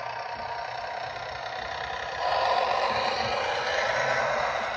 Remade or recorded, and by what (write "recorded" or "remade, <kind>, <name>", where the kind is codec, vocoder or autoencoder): recorded